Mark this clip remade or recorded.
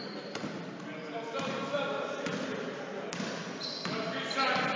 recorded